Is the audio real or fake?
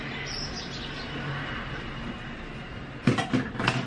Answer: fake